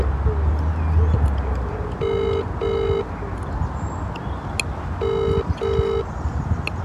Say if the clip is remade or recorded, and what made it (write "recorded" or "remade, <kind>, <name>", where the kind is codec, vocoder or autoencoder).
recorded